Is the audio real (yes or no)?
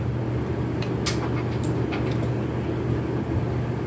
yes